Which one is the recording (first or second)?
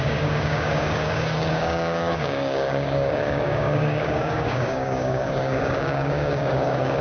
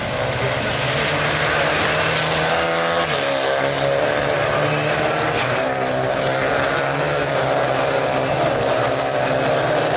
second